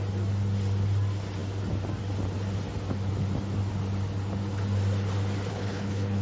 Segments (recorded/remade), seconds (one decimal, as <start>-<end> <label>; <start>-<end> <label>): 0.0-5.5 recorded; 5.5-6.2 remade